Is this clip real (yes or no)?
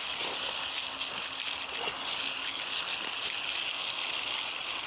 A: yes